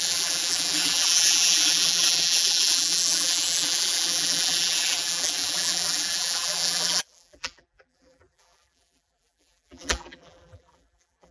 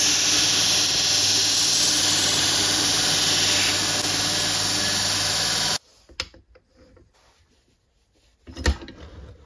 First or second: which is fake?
first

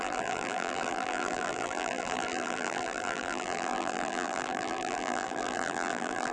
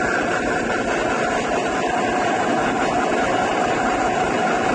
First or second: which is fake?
first